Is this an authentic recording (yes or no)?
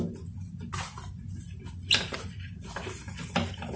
yes